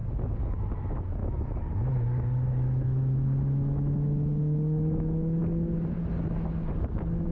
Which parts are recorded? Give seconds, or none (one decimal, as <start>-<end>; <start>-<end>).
0.0-1.2; 5.4-7.3